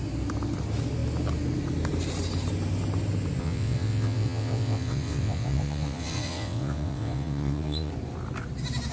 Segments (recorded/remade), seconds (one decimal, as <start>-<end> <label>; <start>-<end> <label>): 0.0-3.4 recorded; 3.4-7.9 remade; 7.9-8.9 recorded